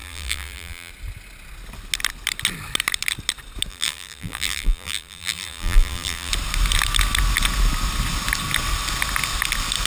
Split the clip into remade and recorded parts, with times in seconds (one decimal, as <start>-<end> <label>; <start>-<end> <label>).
0.0-0.9 remade; 0.9-3.7 recorded; 3.7-6.3 remade; 6.3-9.9 recorded